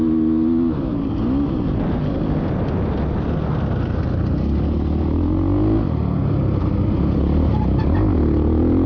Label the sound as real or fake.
real